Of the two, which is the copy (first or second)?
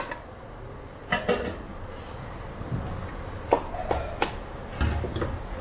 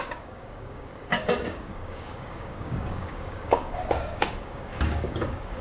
second